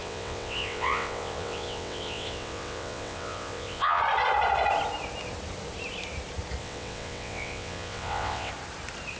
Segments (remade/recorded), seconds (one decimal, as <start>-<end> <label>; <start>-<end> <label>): 0.0-4.0 remade; 4.0-6.6 recorded; 6.6-8.5 remade; 8.5-9.2 recorded